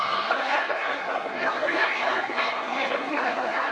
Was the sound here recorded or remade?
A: remade